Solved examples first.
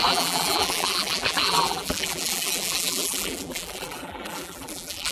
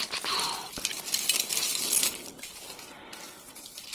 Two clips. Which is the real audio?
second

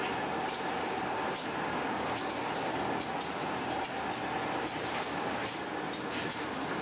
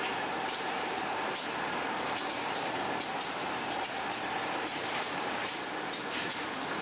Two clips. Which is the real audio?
first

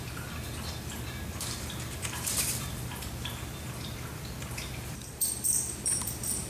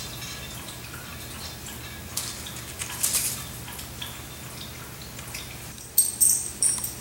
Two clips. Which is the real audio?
second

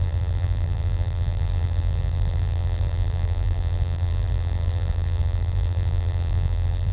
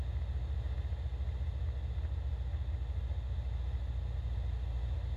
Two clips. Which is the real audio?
second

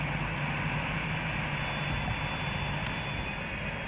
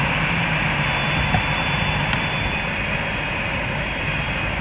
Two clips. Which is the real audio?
first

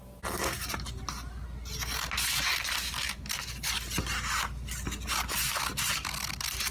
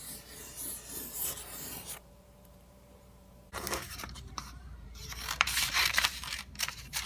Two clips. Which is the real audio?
first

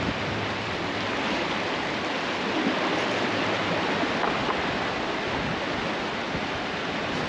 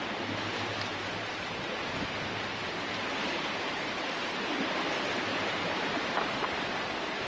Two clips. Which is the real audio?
first